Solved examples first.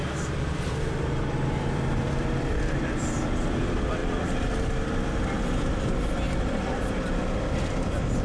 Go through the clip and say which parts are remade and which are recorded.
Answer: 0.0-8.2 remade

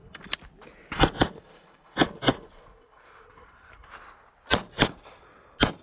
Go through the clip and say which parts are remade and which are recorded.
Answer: 0.0-5.8 recorded